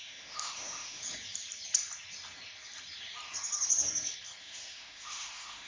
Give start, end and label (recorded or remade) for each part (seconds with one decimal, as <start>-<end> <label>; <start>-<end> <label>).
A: 0.0-1.0 remade; 1.0-4.4 recorded; 4.4-5.7 remade